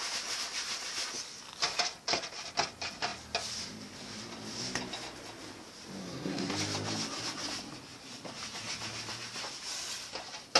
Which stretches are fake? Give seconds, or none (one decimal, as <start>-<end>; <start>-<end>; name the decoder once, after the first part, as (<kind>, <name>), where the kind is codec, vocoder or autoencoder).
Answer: 6.0-6.5 (codec, SNAC)